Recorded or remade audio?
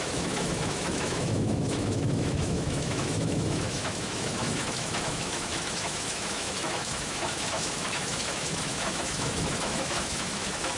remade